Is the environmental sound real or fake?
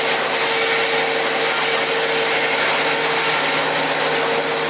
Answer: real